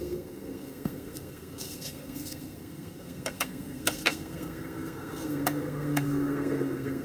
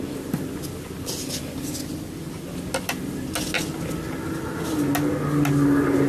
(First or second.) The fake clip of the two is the first